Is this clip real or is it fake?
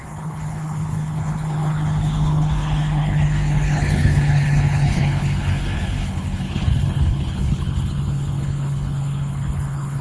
fake